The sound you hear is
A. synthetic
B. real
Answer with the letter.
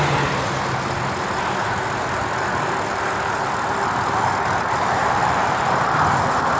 B